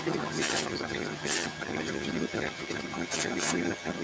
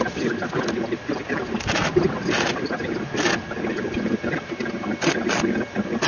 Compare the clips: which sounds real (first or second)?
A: second